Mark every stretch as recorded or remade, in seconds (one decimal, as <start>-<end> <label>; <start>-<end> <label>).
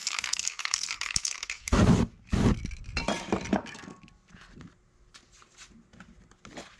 0.0-1.8 remade; 1.8-3.5 recorded; 3.5-4.0 remade; 4.0-6.8 recorded